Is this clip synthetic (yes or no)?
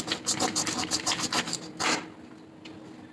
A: no